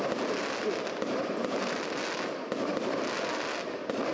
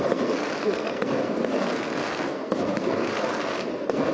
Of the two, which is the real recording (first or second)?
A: first